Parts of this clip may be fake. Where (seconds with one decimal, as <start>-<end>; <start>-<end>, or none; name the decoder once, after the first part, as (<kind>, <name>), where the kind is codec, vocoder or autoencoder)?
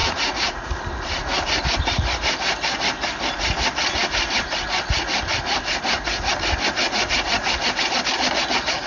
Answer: 0.0-0.7 (vocoder, Vocos)